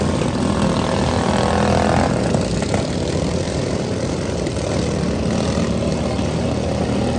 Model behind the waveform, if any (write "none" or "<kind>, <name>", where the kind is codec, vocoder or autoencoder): none